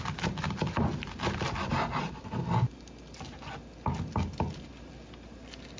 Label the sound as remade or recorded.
recorded